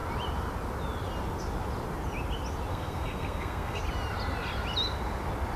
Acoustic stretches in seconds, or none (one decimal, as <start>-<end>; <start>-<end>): 0.0-2.7; 3.8-5.6